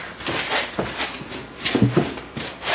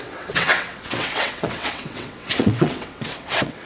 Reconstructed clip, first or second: second